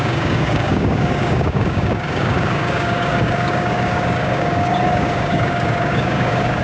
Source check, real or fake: fake